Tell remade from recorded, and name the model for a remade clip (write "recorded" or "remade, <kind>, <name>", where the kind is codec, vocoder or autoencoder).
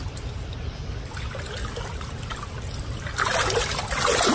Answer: recorded